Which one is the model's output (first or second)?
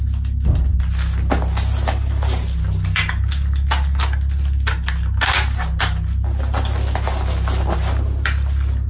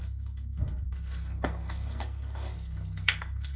second